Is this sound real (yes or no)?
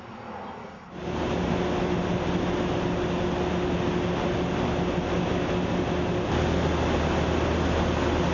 yes